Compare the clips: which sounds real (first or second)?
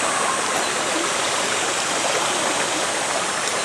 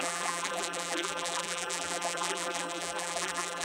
first